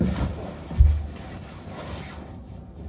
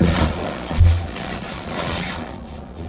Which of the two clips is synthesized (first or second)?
second